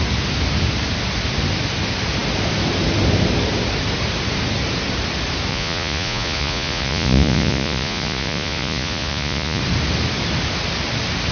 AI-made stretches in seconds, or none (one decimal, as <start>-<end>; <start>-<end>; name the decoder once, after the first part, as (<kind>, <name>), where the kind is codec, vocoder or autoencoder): 5.5-9.6 (vocoder, Vocos)